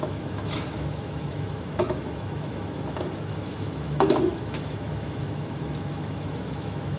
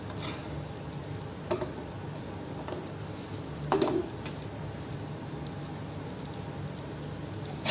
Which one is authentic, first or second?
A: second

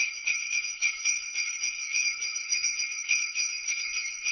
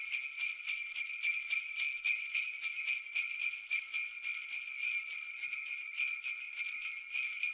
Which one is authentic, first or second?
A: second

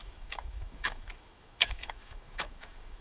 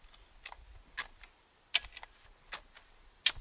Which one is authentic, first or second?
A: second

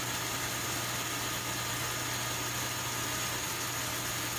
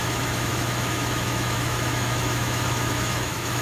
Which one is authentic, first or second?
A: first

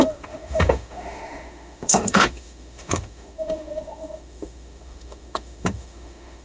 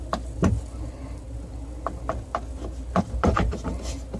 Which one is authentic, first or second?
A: second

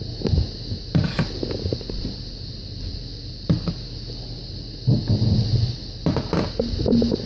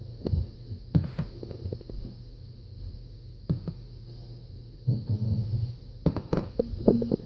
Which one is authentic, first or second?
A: first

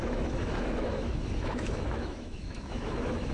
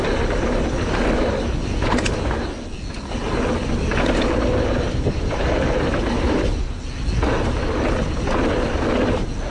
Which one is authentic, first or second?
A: second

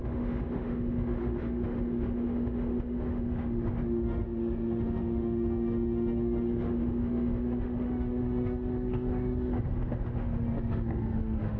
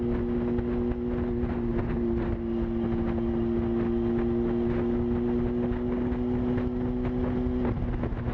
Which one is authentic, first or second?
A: second